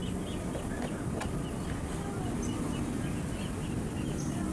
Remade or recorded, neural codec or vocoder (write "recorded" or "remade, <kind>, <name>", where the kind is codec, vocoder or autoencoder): recorded